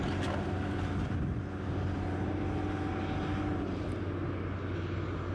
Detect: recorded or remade recorded